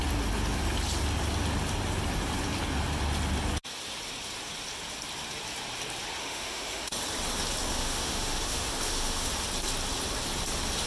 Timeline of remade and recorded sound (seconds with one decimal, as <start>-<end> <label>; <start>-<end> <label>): 0.0-6.2 recorded; 6.2-6.9 remade; 6.9-7.7 recorded; 7.7-9.3 remade; 9.3-10.9 recorded